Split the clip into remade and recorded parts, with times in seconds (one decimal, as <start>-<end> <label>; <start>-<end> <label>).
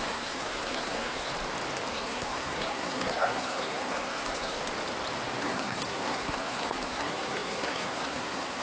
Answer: 0.0-1.3 remade; 1.3-1.9 recorded; 1.9-4.6 remade; 4.6-5.4 recorded; 5.4-8.6 remade